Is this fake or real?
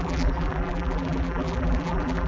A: fake